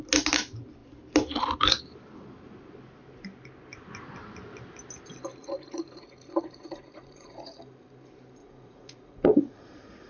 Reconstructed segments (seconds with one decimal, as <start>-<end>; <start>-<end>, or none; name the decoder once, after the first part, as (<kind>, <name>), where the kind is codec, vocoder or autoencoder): 5.4-7.6 (vocoder, Vocos); 8.4-10.1